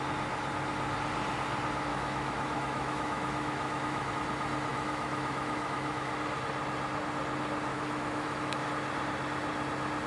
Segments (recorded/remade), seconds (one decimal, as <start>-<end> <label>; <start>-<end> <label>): 0.0-1.9 recorded; 1.9-4.1 remade; 4.1-4.7 recorded; 4.7-6.1 remade; 6.1-7.7 recorded; 7.7-8.7 remade; 8.7-10.1 recorded